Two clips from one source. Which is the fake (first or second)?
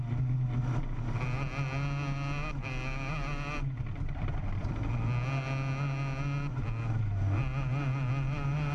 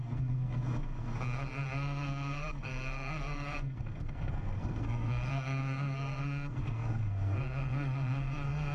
second